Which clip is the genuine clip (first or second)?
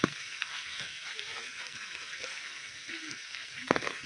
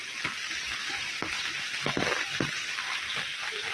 second